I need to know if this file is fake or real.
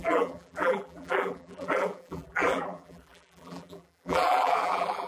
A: fake